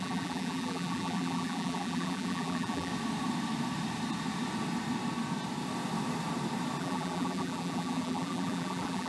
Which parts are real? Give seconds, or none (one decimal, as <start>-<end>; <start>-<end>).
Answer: 2.9-6.8